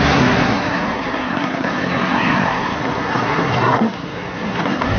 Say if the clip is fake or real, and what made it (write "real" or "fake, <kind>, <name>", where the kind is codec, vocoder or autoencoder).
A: fake, codec, SNAC